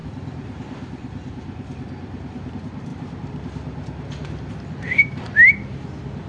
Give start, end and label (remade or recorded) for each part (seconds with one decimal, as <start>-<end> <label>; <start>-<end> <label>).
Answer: 0.0-6.3 recorded